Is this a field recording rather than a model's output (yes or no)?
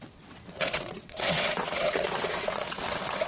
no